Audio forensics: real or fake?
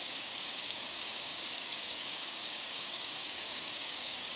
fake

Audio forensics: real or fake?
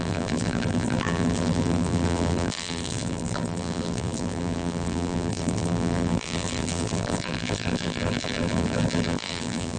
fake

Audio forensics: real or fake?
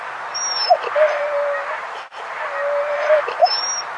real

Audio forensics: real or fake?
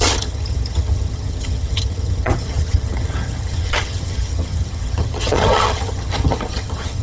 fake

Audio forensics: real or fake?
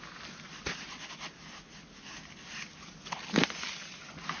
real